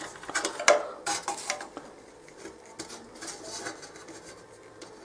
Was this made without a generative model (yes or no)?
yes